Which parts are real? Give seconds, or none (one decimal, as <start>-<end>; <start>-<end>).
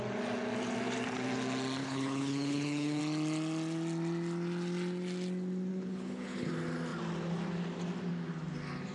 0.0-1.8; 3.0-5.7; 6.5-8.9